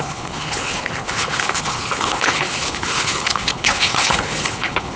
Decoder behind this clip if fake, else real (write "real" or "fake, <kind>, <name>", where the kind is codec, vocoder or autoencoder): fake, codec, HILCodec